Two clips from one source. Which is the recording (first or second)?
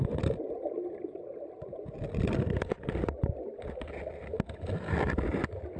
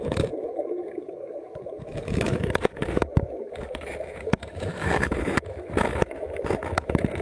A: first